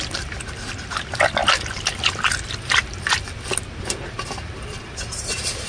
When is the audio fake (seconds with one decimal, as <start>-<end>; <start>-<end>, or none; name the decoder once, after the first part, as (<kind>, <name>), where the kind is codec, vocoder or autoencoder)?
none